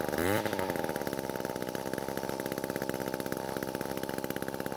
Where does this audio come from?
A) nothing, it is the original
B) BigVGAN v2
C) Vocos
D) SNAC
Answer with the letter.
B